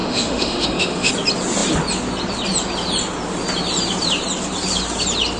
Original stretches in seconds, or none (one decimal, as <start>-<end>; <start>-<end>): 1.1-5.4